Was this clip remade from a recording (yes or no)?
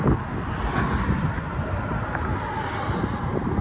no